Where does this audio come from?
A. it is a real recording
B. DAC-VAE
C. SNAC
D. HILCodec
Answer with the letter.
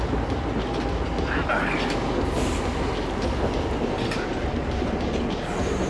A